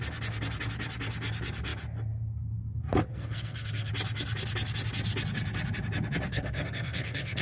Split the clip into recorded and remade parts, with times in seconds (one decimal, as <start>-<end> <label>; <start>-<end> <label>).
0.0-3.1 recorded; 3.1-3.9 remade; 3.9-6.3 recorded; 6.3-7.4 remade